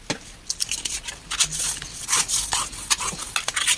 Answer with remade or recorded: recorded